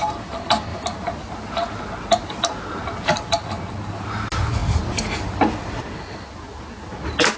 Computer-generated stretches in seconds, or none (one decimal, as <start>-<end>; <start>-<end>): none